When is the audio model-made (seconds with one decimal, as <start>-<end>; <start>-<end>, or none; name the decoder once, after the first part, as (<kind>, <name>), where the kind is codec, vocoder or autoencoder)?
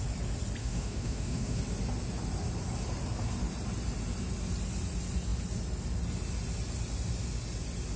0.6-1.6 (autoencoder, DAC-VAE)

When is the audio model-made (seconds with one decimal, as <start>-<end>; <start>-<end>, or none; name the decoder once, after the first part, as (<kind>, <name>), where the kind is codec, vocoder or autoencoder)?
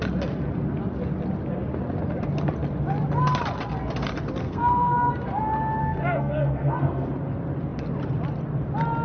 4.4-5.1 (codec, SNAC); 5.8-7.1